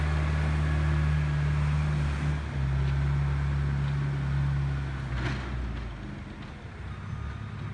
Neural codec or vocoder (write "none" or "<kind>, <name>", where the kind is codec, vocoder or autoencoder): none